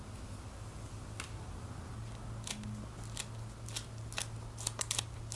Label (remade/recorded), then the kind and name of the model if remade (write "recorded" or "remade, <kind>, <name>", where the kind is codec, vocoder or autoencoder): recorded